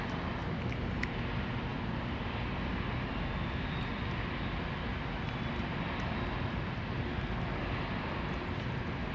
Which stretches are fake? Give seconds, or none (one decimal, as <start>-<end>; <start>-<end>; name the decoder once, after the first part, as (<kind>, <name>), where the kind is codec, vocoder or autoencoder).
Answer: none